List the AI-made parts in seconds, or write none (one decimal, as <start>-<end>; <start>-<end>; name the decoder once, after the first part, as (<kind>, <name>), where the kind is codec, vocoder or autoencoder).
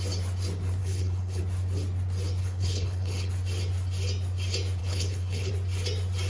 0.8-1.4 (codec, HILCodec); 2.4-3.3; 4.8-5.5